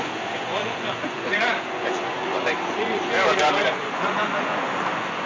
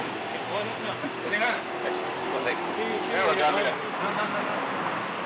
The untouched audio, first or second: second